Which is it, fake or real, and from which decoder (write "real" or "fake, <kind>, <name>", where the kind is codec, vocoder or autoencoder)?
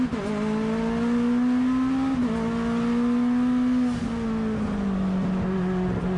real